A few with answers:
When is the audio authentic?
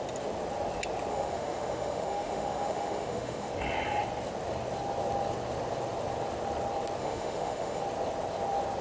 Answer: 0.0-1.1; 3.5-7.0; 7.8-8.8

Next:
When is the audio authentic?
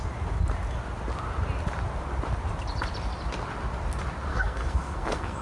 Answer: 0.0-4.3